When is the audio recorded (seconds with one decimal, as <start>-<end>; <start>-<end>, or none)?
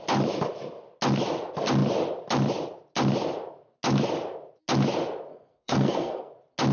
0.0-5.3; 6.3-6.7